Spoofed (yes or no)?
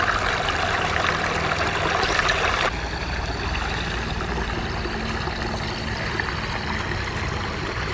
no